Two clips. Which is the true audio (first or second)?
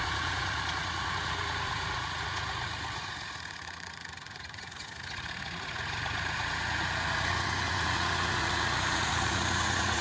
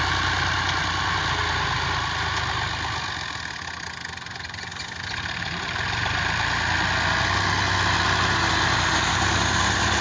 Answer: second